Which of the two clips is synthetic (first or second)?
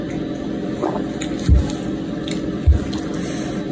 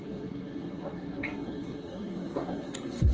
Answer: second